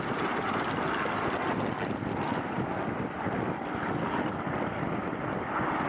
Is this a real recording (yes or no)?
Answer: yes